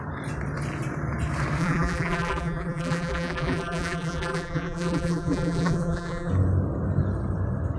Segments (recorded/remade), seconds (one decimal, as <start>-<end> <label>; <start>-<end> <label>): 0.0-1.6 recorded; 1.6-6.3 remade; 6.3-7.8 recorded

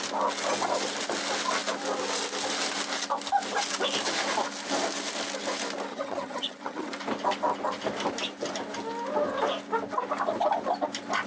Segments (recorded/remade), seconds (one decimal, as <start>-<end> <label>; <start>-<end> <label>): 0.0-5.9 recorded; 5.9-6.9 remade; 6.9-11.3 recorded

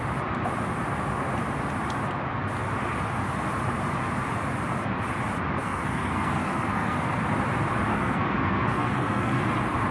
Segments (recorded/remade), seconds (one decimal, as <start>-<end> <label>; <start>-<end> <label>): 0.0-5.6 recorded; 5.6-7.2 remade; 7.2-7.9 recorded; 7.9-9.4 remade; 9.4-9.9 recorded

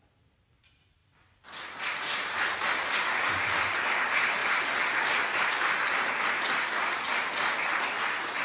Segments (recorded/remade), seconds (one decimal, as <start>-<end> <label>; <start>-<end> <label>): 0.0-8.4 recorded

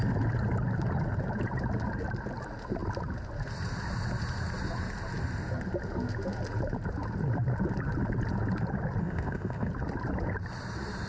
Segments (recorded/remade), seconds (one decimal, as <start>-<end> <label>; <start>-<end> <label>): 0.0-9.0 recorded; 9.0-9.7 remade; 9.7-11.1 recorded

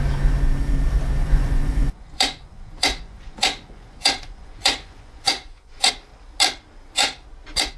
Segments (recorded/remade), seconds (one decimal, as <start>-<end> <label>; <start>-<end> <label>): 0.0-1.2 recorded; 1.2-5.9 remade; 5.9-7.8 recorded

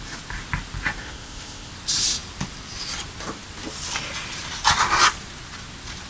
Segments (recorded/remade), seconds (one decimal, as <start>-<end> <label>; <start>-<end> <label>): 0.0-1.0 recorded; 1.0-1.7 remade; 1.7-6.1 recorded